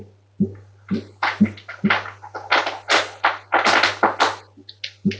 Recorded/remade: recorded